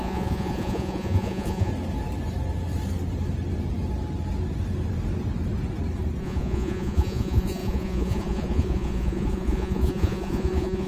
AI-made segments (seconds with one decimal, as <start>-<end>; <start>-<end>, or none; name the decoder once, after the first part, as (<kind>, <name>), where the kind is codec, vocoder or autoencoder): 0.0-1.7 (vocoder, Vocos); 6.2-10.9